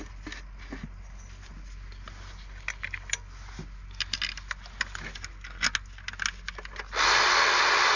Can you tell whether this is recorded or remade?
recorded